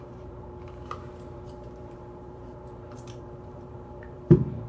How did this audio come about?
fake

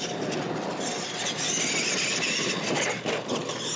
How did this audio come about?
real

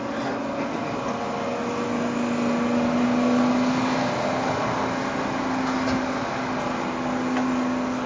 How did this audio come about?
real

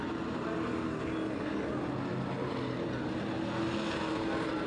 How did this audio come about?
real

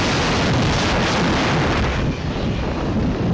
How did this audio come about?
real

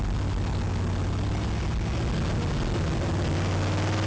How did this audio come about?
real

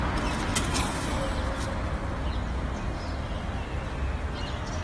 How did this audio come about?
real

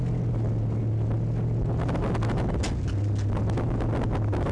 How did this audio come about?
real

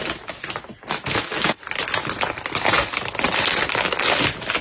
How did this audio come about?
real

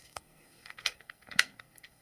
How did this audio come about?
fake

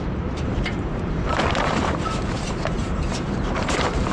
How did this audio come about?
fake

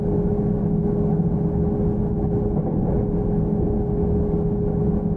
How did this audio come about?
real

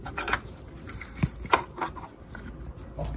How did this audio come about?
real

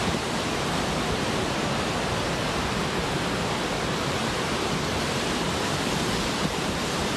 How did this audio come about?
fake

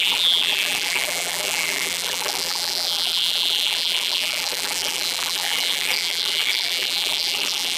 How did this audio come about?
fake